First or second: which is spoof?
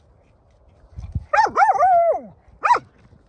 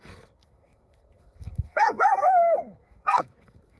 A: second